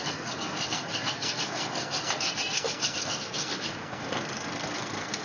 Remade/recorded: remade